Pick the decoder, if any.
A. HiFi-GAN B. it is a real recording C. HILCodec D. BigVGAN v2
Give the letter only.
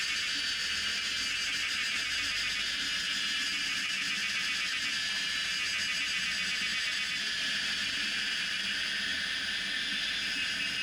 B